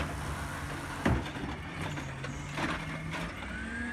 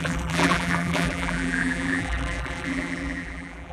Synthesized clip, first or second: second